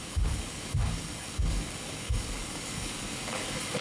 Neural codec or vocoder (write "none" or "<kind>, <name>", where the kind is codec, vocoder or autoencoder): codec, DAC